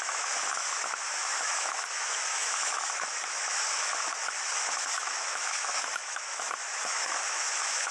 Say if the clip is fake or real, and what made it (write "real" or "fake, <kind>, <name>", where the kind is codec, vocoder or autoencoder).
fake, autoencoder, DAC-VAE